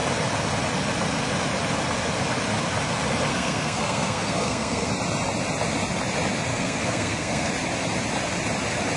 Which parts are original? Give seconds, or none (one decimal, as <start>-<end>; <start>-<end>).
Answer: 0.0-3.3; 4.9-6.5; 7.5-9.0